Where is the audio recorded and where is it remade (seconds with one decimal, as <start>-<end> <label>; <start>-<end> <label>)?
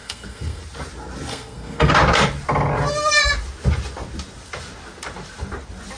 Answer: 0.0-0.6 remade; 0.6-1.3 recorded; 1.3-1.9 remade; 1.9-6.0 recorded